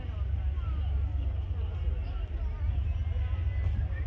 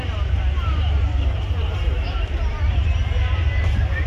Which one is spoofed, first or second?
second